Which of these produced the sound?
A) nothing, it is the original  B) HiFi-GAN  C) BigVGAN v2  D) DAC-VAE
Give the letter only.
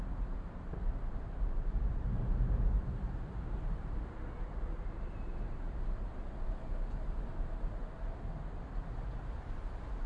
C